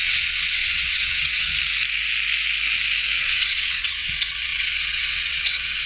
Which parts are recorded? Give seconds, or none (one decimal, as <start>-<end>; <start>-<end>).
1.5-3.2